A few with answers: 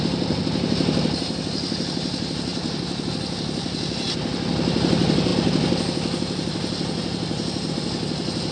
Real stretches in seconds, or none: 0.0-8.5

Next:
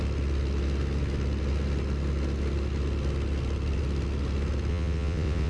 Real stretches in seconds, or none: 0.0-4.7

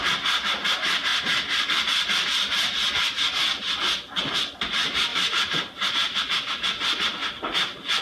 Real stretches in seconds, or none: 0.0-5.1; 6.2-8.0

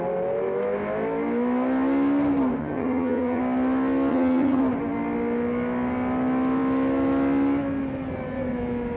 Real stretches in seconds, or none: 0.0-2.6; 3.4-4.1; 4.6-9.0